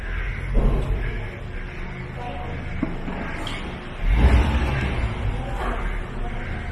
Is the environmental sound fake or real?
real